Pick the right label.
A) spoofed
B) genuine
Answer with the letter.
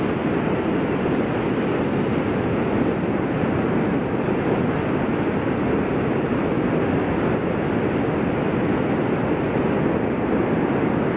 B